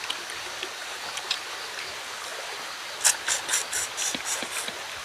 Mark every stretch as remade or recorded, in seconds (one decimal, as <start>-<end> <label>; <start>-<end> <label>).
0.0-0.8 recorded; 0.8-1.4 remade; 1.4-5.0 recorded

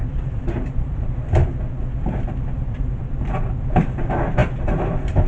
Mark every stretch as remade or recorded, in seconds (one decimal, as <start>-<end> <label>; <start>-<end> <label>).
0.0-1.4 remade; 1.4-2.3 recorded; 2.3-5.3 remade

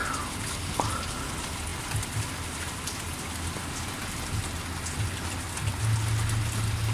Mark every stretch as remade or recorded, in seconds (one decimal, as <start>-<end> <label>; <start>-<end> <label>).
0.0-1.7 recorded; 1.7-5.8 remade; 5.8-6.9 recorded

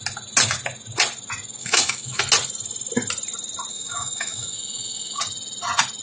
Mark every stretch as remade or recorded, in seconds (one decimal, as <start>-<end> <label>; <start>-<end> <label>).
0.0-1.6 recorded; 1.6-2.2 remade; 2.2-3.7 recorded; 3.7-5.2 remade; 5.2-6.0 recorded